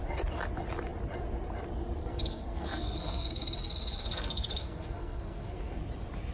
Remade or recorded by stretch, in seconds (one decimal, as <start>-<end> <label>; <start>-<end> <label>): 0.0-2.0 recorded; 2.0-5.8 remade; 5.8-6.3 recorded